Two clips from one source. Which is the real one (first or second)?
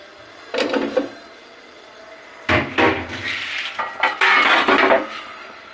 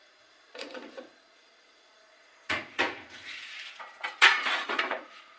first